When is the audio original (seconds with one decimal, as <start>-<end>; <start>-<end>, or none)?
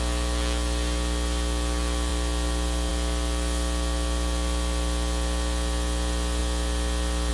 0.0-7.3